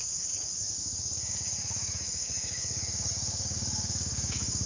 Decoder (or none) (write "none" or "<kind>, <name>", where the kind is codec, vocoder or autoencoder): codec, DAC